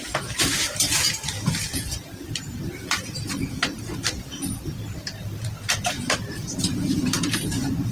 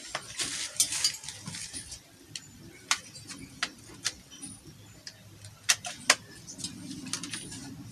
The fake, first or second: first